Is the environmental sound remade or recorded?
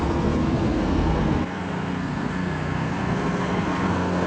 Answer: remade